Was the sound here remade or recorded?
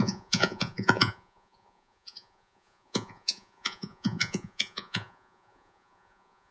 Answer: remade